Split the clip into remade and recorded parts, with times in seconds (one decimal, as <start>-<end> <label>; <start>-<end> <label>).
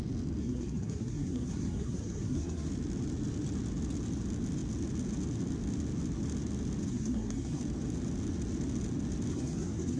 0.0-0.4 recorded; 0.4-2.7 remade; 2.7-6.9 recorded; 6.9-7.6 remade; 7.6-9.3 recorded; 9.3-10.0 remade